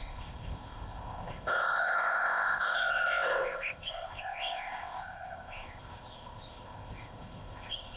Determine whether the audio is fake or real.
fake